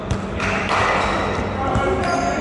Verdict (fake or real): real